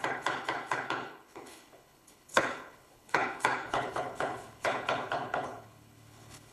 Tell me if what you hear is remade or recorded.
remade